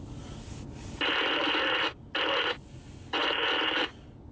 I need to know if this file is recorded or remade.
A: recorded